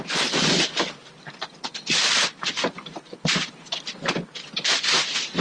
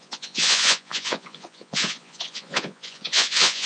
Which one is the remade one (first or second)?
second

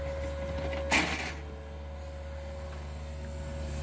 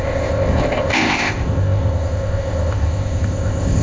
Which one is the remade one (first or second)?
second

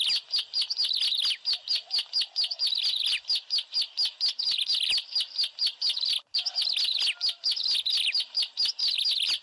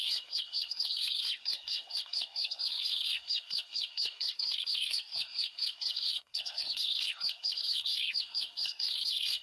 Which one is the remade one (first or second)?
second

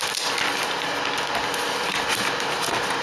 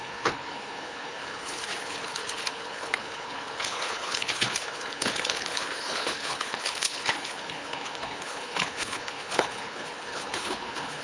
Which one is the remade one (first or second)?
second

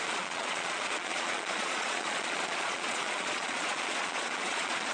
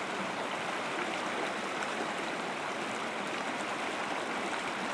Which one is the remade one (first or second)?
first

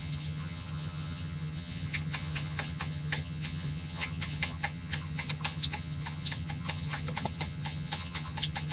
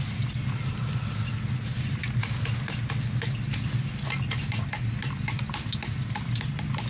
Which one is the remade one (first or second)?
first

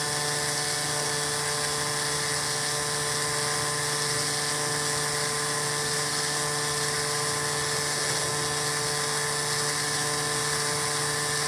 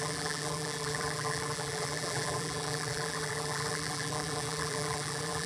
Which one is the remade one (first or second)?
second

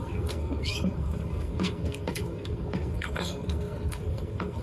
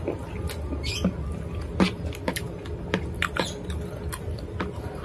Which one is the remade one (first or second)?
first